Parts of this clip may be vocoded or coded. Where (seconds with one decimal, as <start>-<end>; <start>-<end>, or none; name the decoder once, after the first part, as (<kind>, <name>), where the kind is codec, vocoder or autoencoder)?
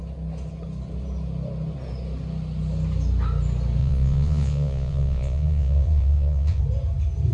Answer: 3.8-6.6 (vocoder, Vocos)